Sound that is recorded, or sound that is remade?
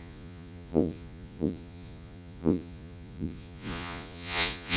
remade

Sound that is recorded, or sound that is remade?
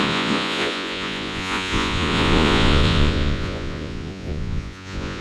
remade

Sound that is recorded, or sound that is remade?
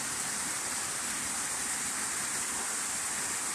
recorded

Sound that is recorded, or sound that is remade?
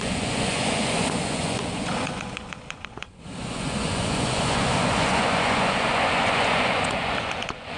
remade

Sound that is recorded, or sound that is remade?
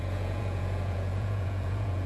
remade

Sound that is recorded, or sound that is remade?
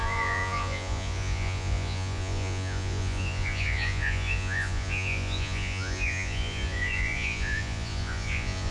remade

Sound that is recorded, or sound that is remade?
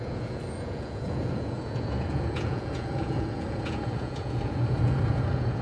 remade